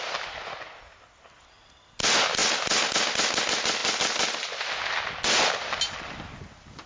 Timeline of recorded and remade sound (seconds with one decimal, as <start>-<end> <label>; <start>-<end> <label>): 0.0-6.9 recorded